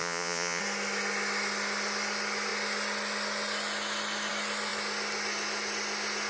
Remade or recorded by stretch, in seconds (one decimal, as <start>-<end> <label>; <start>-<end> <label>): 0.0-0.6 remade; 0.6-6.3 recorded

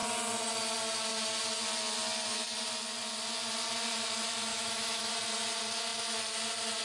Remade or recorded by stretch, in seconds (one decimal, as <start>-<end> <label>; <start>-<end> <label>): 0.0-4.5 recorded; 4.5-5.1 remade; 5.1-6.8 recorded